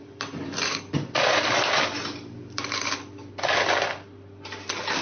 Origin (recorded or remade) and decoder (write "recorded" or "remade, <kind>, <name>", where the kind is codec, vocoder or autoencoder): recorded